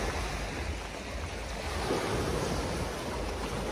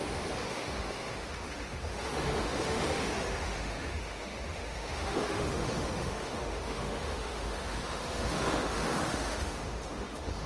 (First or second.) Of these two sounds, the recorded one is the first